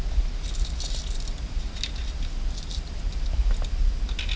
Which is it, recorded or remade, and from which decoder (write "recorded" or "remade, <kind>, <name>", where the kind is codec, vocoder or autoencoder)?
recorded